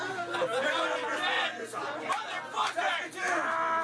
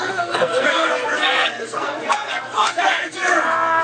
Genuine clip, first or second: first